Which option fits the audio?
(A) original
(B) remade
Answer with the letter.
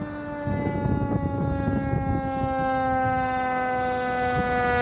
A